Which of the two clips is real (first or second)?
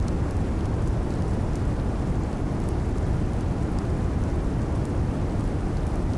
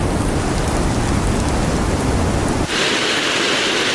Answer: first